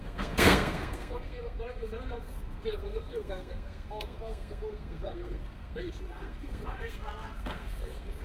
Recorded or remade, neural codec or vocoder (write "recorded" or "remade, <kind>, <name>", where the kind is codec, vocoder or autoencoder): remade, codec, SNAC